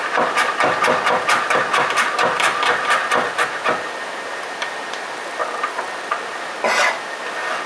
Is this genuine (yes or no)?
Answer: yes